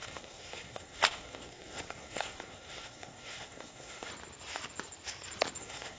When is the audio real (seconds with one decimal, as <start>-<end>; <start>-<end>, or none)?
4.1-5.6